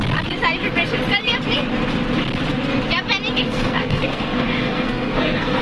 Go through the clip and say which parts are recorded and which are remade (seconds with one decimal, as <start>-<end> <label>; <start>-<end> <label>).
0.0-3.4 recorded; 3.4-5.6 remade

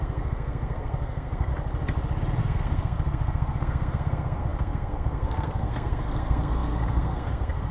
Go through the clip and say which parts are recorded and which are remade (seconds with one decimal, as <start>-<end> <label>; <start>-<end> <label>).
0.0-1.5 remade; 1.5-2.4 recorded; 2.4-7.7 remade

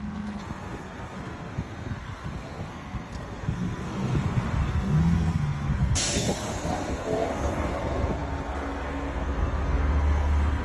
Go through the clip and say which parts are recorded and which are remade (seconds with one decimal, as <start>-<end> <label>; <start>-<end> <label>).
0.0-10.6 remade

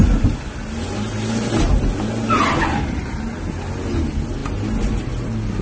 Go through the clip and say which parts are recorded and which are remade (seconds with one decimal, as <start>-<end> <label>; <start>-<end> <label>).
0.0-5.6 recorded